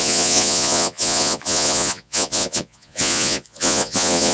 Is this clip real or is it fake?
fake